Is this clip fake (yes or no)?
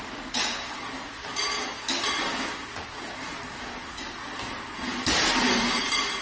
no